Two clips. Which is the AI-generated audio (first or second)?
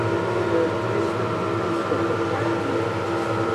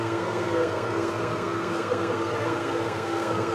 second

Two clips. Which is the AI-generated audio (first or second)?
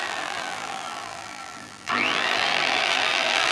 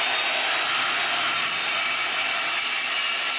first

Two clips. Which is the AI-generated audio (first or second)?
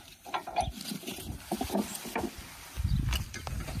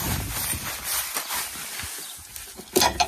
first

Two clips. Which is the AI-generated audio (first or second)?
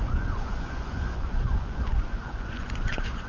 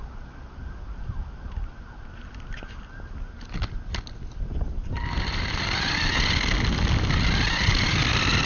first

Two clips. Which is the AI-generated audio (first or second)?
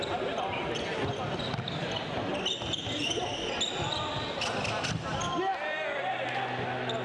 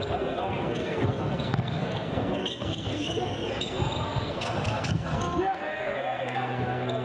second